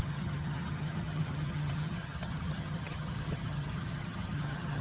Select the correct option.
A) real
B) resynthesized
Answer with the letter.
B